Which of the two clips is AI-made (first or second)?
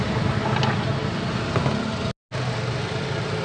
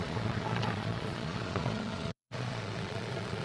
second